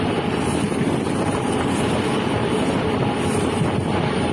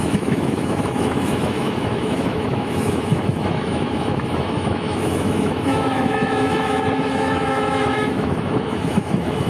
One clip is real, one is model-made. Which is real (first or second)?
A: first